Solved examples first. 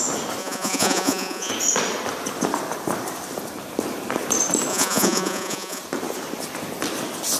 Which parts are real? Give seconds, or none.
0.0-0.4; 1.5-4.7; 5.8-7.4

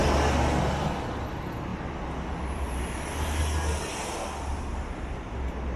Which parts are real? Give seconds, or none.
0.0-5.8